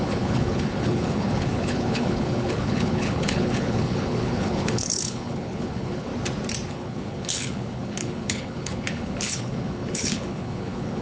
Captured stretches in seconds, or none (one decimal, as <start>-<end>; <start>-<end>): 6.1-6.7